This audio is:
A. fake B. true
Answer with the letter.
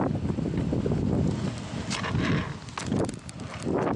B